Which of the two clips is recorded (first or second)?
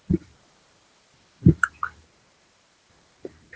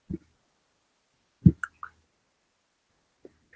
second